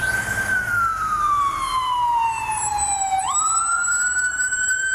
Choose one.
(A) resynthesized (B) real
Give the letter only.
A